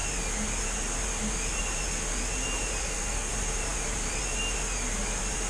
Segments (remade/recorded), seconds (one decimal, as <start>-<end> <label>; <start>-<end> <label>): 0.0-2.8 recorded; 2.8-3.3 remade; 3.3-5.5 recorded